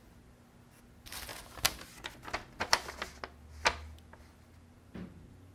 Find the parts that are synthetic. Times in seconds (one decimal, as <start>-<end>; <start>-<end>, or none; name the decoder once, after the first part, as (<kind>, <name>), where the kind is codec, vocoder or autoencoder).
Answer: none